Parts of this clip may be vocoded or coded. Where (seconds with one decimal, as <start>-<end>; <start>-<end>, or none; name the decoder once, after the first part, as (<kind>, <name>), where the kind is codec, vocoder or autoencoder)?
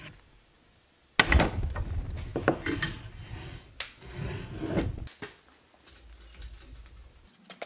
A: none